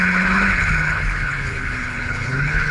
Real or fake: fake